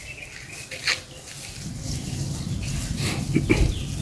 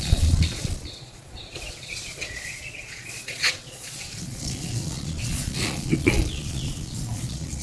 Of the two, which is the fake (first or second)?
second